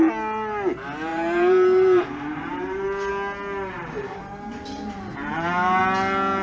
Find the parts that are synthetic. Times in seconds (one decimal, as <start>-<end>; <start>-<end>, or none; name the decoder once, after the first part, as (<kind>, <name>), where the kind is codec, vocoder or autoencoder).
1.1-3.1 (vocoder, BigVGAN v2); 3.8-5.8

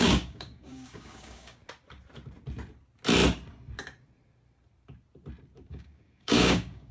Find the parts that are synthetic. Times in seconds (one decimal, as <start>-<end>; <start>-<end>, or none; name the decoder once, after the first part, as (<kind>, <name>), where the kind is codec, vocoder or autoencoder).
0.0-1.6 (codec, DAC); 5.7-6.9